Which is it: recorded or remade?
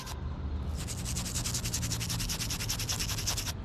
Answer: recorded